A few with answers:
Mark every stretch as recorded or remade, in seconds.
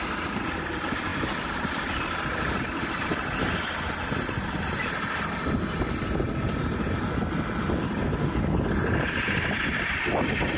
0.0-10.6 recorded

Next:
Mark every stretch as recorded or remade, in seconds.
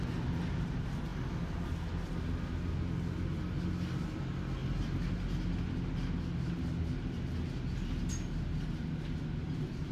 0.0-9.9 recorded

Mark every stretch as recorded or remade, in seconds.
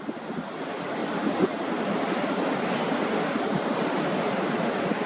0.0-1.0 recorded; 1.0-4.1 remade; 4.1-5.1 recorded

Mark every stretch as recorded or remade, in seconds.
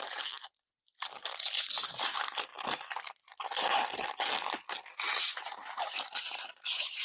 0.0-2.5 remade; 2.5-4.9 recorded; 4.9-7.0 remade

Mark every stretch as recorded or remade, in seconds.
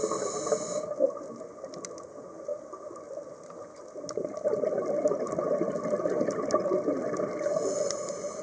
0.0-8.4 recorded